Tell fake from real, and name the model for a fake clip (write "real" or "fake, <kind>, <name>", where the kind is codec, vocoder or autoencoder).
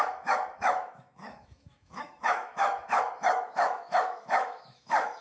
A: fake, autoencoder, DAC-VAE